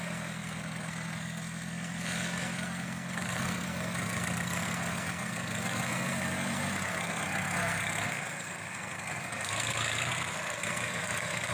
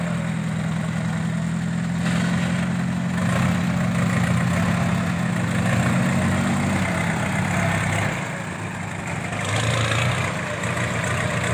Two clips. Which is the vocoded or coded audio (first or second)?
first